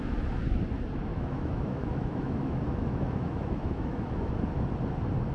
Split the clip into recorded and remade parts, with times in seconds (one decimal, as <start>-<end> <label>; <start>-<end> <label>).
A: 0.0-1.1 recorded; 1.1-4.3 remade; 4.3-5.3 recorded